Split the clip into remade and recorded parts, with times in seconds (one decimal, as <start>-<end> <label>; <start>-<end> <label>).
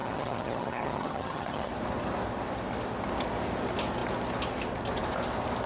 0.0-1.7 remade; 1.7-5.7 recorded